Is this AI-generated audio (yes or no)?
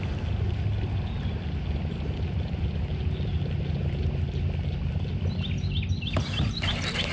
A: no